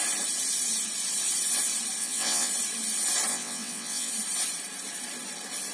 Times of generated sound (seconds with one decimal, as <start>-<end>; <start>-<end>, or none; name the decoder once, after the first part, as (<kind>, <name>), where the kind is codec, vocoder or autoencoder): 2.0-2.5 (vocoder, WaveNeXt); 3.3-4.1